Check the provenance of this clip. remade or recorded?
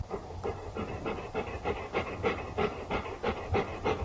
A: remade